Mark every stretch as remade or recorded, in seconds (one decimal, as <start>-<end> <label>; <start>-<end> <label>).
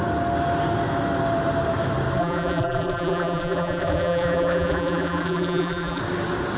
0.0-2.2 recorded; 2.2-6.0 remade; 6.0-6.6 recorded